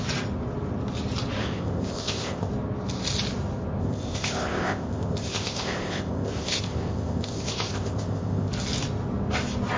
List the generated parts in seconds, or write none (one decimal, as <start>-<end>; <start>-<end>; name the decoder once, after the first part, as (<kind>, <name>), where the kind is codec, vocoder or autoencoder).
1.4-2.5 (codec, ZipCodec); 3.8-8.5